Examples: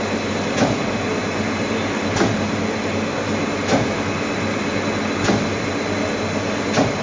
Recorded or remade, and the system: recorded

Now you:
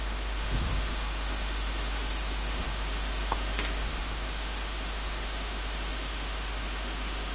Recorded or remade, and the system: remade, autoencoder, DAC-VAE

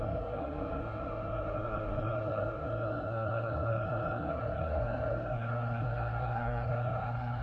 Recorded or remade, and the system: remade, codec, SNAC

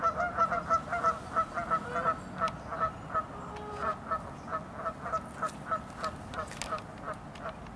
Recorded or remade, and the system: recorded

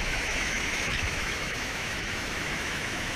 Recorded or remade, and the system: remade, autoencoder, DAC-VAE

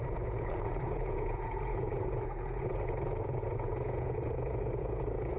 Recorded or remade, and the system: remade, vocoder, Vocos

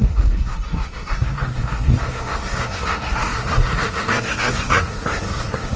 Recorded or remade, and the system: remade, codec, SNAC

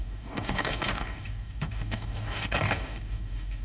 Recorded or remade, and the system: remade, codec, DAC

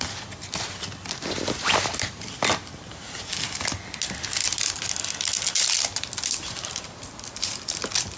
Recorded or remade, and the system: recorded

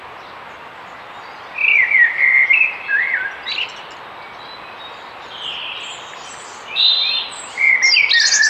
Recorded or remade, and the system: recorded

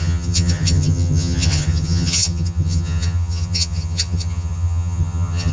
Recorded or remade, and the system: remade, vocoder, HiFi-GAN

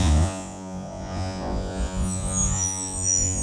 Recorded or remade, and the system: remade, vocoder, Vocos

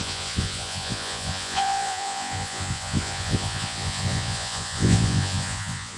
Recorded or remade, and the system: remade, vocoder, Vocos